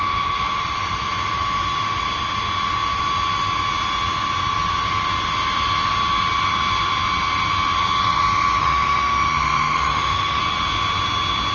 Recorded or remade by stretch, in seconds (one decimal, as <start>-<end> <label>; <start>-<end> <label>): 0.0-8.6 recorded; 8.6-10.4 remade; 10.4-11.5 recorded